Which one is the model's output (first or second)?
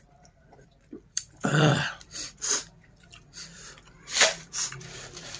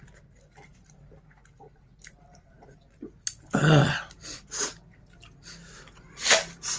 first